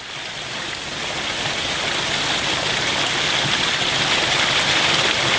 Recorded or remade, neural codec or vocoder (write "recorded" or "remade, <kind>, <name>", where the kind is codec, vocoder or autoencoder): recorded